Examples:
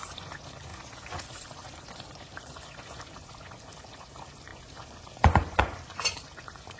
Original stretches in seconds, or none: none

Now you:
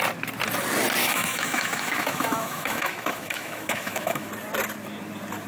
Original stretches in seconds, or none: 0.0-1.0; 4.3-5.5

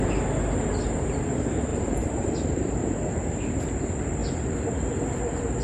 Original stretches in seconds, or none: 0.0-1.7; 3.6-5.6

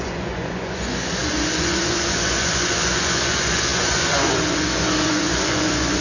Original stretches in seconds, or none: none

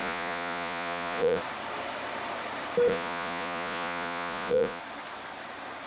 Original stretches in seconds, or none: 1.4-2.9; 4.8-5.9

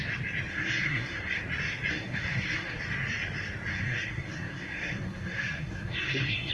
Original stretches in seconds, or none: 0.0-0.5; 1.4-1.9; 2.8-3.7

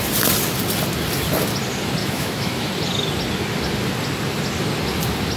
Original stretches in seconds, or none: 0.0-2.0; 2.7-5.4